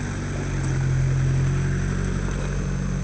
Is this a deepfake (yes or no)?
no